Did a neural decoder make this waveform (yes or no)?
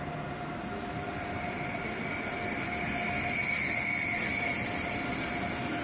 no